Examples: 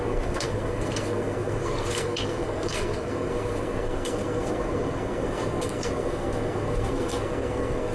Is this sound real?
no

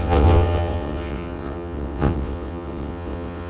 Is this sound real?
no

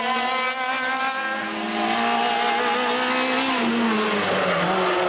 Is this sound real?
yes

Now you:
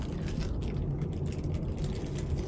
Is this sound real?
yes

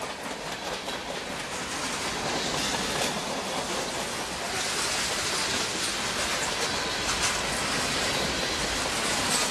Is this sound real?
yes